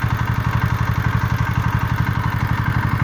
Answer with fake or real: real